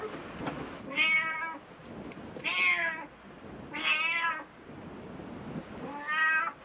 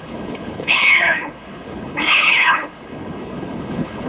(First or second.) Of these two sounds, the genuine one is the first